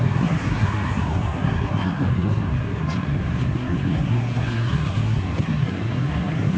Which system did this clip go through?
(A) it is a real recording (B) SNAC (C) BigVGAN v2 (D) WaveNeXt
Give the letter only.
B